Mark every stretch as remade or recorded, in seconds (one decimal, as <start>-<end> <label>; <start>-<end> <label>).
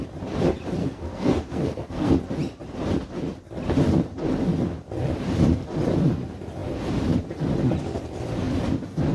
0.0-0.8 recorded; 0.8-2.1 remade; 2.1-9.1 recorded